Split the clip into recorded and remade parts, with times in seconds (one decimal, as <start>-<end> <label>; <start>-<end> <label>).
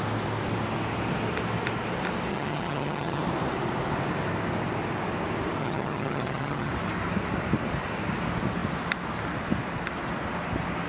0.0-2.3 recorded; 2.3-3.2 remade; 3.2-5.6 recorded; 5.6-6.7 remade; 6.7-10.9 recorded